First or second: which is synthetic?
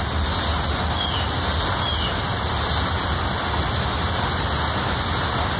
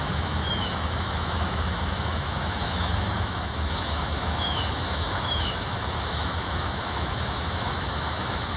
second